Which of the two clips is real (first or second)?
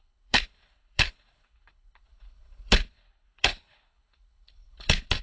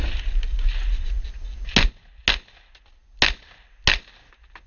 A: second